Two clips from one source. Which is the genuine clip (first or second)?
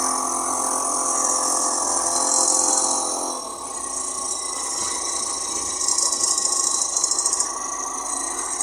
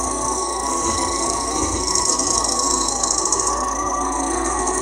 first